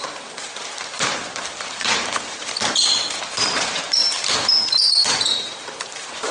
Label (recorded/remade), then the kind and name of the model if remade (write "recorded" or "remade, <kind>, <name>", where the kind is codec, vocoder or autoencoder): remade, vocoder, BigVGAN v2